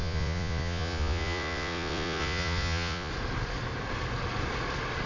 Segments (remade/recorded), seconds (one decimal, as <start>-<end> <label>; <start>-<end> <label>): 0.0-3.1 remade; 3.1-5.1 recorded